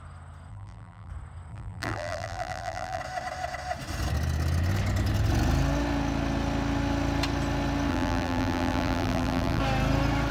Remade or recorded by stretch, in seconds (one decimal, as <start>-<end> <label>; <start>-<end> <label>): 0.0-0.5 recorded; 0.5-1.1 remade; 1.1-1.5 recorded; 1.5-3.0 remade; 3.0-7.9 recorded; 7.9-9.6 remade; 9.6-10.3 recorded